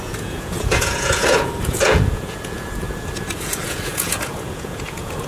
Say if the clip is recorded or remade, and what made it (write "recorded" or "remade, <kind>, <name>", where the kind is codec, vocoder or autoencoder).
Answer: remade, vocoder, Vocos